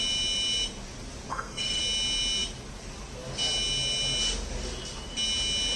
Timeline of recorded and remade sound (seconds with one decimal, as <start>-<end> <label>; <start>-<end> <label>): 0.0-1.3 recorded; 1.3-1.8 remade; 1.8-5.8 recorded